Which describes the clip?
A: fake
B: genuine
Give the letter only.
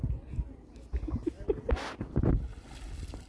B